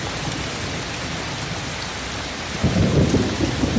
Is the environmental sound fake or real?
real